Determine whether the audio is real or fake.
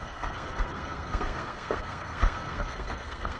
fake